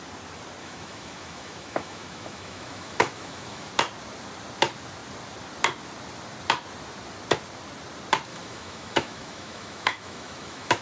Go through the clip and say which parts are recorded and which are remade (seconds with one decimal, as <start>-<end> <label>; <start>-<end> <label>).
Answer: 0.0-0.6 recorded; 0.6-3.7 remade; 3.7-8.3 recorded; 8.3-10.8 remade